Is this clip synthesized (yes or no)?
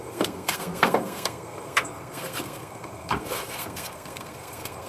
yes